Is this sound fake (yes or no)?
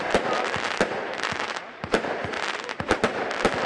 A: no